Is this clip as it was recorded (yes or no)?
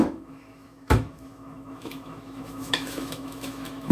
no